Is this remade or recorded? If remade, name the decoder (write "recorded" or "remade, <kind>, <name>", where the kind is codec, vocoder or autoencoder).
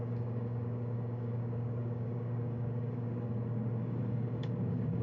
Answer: remade, codec, DAC